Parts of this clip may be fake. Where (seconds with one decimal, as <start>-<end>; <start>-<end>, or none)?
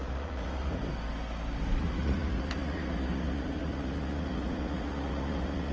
0.0-0.8; 1.8-5.7